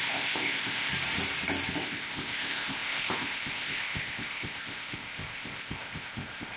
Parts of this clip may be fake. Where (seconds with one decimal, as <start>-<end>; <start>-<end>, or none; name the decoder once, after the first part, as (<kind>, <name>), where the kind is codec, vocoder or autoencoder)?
0.0-0.9 (codec, ZipCodec); 1.8-6.6